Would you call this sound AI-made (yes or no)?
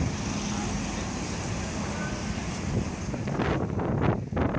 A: no